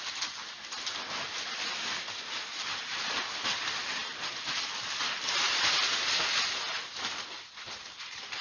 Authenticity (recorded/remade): recorded